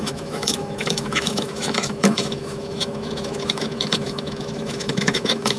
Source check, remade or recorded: remade